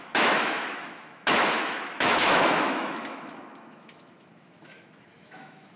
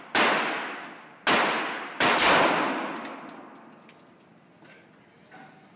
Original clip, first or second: second